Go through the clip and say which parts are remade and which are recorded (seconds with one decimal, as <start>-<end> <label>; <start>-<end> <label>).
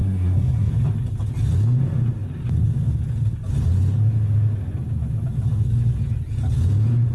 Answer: 0.0-0.7 remade; 0.7-7.1 recorded